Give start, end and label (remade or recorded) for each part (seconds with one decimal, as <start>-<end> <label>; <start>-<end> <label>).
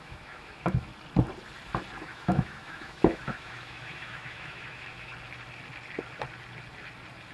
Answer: 0.0-0.9 remade; 0.9-2.0 recorded; 2.0-5.1 remade; 5.1-7.3 recorded